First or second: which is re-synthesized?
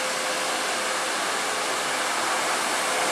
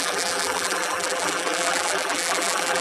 second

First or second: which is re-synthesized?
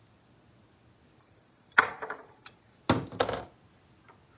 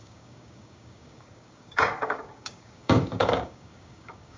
second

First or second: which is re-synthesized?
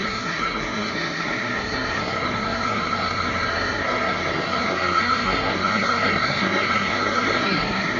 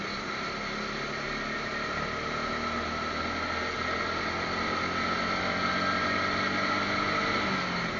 first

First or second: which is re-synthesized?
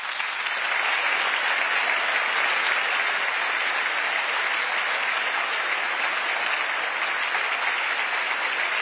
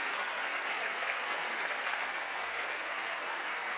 second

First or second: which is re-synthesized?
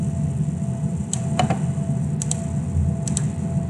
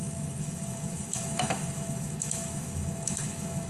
second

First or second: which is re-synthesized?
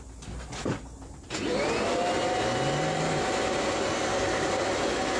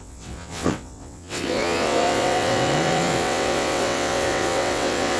second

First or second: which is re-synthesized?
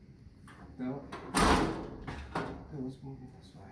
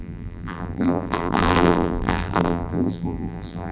second